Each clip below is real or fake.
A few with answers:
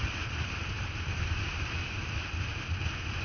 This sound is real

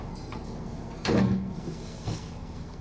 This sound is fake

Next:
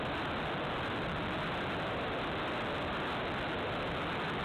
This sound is real